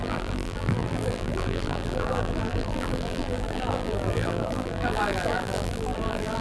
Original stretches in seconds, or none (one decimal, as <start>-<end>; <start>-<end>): none